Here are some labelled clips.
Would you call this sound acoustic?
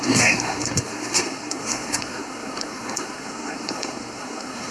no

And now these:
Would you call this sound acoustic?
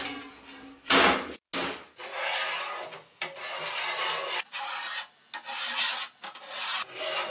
yes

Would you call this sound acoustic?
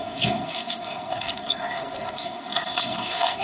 no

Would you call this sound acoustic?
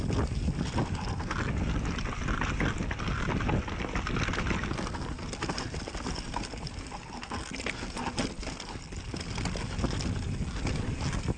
yes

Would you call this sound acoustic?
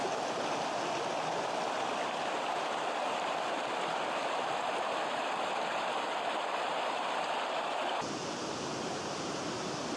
yes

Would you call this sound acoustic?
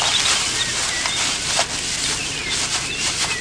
yes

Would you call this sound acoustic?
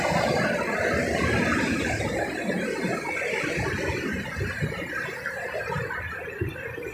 yes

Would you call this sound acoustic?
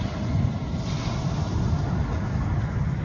yes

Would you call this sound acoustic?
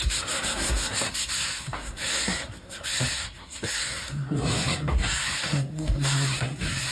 no